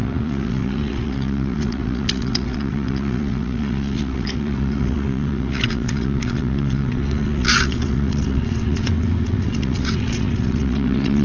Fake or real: fake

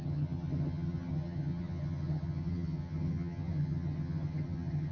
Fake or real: fake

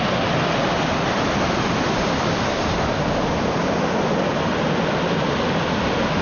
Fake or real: real